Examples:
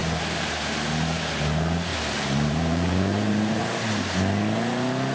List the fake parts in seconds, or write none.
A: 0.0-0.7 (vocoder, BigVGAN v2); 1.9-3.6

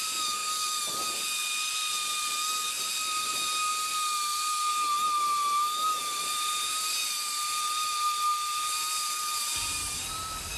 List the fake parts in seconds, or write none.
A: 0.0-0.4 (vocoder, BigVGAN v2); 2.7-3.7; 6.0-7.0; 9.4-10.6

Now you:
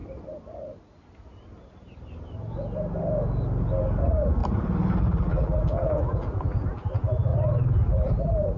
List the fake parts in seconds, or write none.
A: 4.0-4.4 (vocoder, BigVGAN v2); 5.0-8.6